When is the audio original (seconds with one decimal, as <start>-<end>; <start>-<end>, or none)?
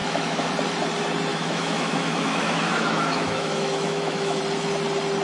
0.5-1.3; 4.4-5.2